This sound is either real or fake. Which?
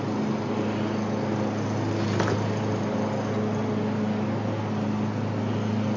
real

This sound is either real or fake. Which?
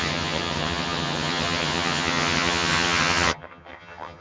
fake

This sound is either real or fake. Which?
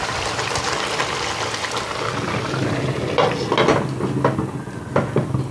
real